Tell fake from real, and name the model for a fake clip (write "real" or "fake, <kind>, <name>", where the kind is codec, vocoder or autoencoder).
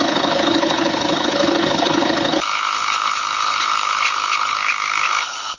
fake, codec, HILCodec